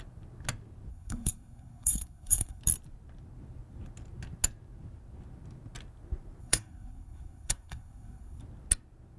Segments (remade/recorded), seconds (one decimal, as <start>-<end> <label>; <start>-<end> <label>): 0.0-0.9 recorded; 0.9-2.6 remade; 2.6-6.4 recorded; 6.4-8.4 remade; 8.4-9.2 recorded